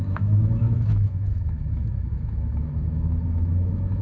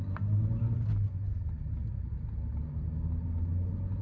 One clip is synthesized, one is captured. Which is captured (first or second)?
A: second